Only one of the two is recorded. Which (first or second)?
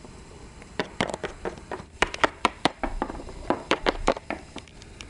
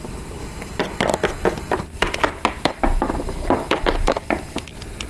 second